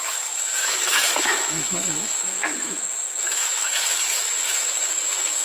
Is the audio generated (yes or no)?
yes